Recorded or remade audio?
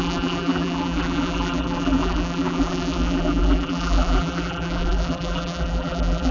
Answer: remade